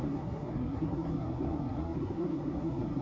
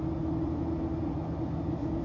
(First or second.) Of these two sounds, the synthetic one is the first